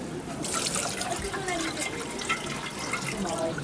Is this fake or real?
real